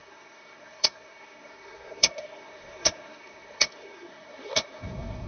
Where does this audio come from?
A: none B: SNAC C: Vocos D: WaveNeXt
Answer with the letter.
B